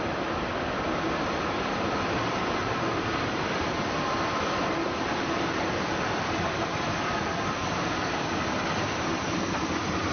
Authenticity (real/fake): fake